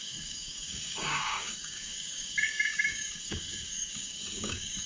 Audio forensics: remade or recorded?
remade